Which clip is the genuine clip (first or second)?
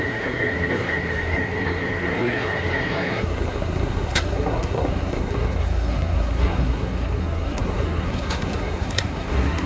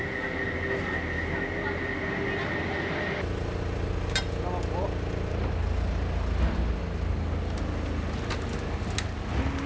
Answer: second